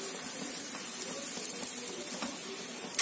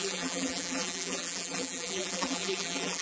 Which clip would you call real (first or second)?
first